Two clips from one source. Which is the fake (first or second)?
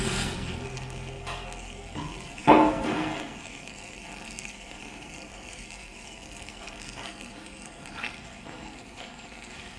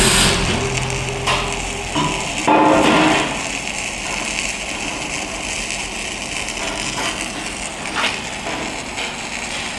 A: first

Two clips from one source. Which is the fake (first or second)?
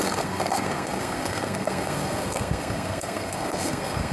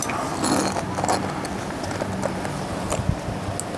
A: first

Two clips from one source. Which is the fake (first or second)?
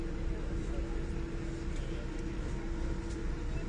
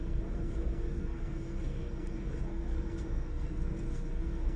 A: second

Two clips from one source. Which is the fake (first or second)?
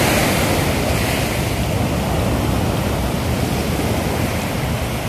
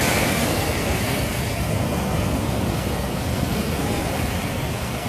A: second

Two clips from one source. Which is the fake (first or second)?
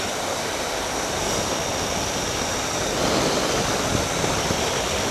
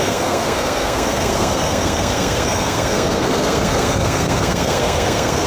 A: second